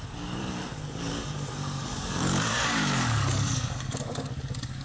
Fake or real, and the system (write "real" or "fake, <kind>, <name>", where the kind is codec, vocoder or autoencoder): fake, codec, DAC